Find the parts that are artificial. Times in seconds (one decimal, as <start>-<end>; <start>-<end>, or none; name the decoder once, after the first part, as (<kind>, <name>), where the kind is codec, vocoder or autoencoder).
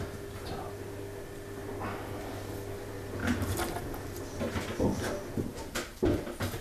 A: 3.2-4.5 (vocoder, BigVGAN v2)